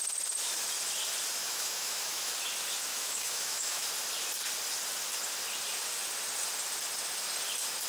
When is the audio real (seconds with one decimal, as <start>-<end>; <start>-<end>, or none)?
0.0-1.4; 2.3-2.9; 3.9-7.9